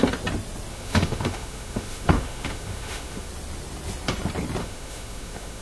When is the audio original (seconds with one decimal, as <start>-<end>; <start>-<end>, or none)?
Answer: 0.0-0.7; 3.3-4.6